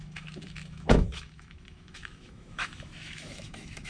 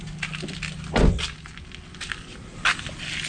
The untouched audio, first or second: second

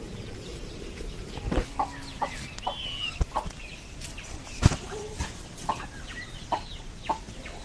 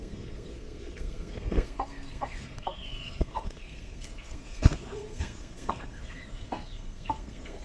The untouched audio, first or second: first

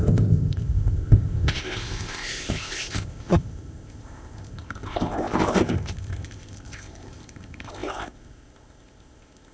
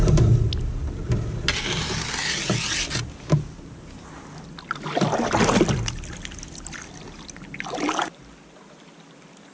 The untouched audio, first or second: second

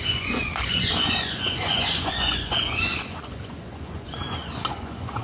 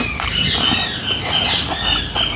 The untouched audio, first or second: second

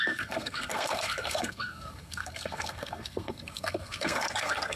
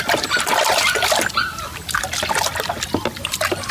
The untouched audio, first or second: second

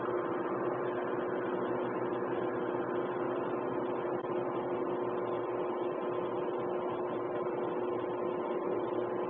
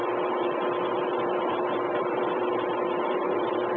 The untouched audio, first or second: first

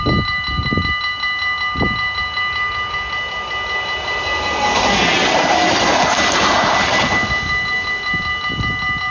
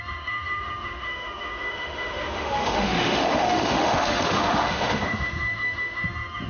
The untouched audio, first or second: first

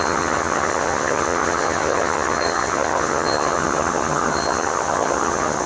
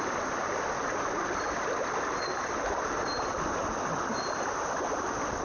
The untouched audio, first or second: second